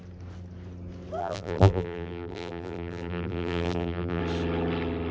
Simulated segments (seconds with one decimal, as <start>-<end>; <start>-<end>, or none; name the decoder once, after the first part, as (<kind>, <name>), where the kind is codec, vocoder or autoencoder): 1.2-4.2 (vocoder, BigVGAN v2)